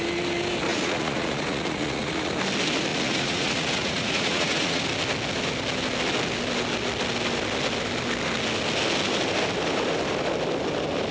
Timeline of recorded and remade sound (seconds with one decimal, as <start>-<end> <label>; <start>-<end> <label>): 0.0-0.7 recorded; 0.7-2.3 remade; 2.3-2.9 recorded; 2.9-4.8 remade; 4.8-11.1 recorded